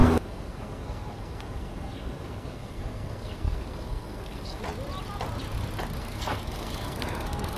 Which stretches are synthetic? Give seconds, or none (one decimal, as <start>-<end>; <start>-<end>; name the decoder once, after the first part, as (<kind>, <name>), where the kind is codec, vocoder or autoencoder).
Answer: 0.0-4.6 (codec, SNAC); 6.0-7.6